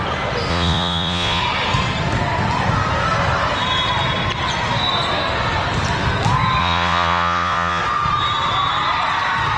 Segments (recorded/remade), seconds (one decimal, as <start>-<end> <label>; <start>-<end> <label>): 0.0-0.5 recorded; 0.5-1.4 remade; 1.4-6.6 recorded; 6.6-7.8 remade; 7.8-9.6 recorded